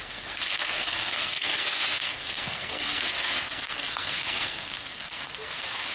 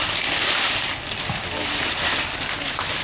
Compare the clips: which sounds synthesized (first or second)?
first